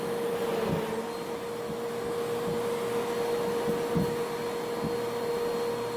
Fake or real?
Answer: real